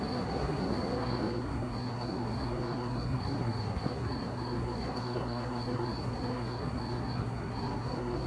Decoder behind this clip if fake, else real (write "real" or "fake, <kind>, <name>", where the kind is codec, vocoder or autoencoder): fake, codec, SNAC